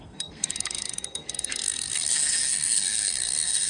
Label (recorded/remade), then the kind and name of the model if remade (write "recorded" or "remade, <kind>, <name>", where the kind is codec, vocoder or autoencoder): remade, codec, SNAC